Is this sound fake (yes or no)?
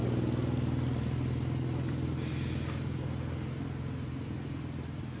no